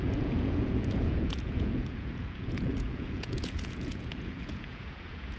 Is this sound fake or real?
fake